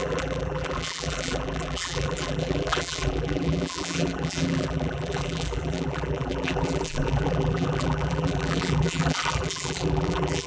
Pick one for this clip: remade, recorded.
remade